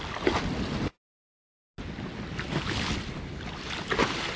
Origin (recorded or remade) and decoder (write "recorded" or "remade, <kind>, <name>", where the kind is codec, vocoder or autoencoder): recorded